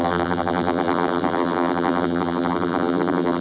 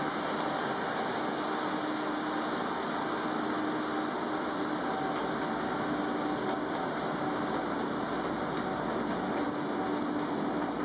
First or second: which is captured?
second